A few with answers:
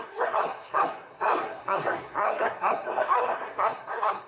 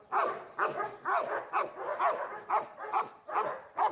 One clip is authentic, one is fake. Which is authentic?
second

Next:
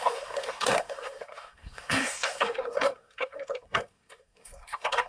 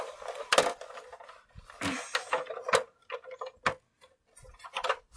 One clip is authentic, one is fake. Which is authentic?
second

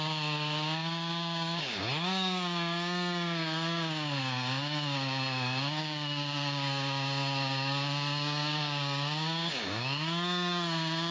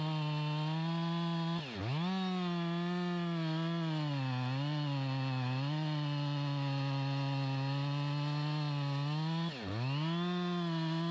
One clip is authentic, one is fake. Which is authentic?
second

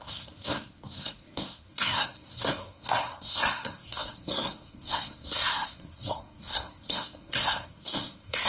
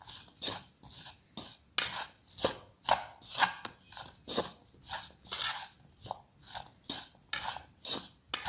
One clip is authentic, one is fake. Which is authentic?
second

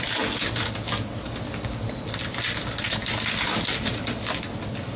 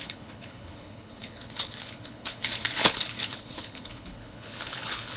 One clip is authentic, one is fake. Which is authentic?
first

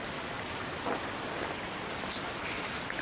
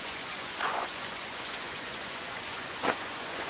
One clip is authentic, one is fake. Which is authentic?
first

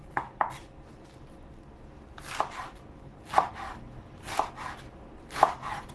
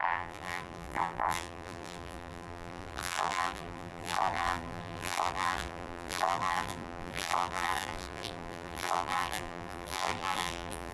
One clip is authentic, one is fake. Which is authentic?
first